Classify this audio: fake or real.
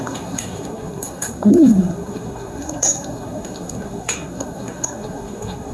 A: fake